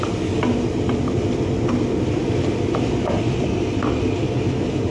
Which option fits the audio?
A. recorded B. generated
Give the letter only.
A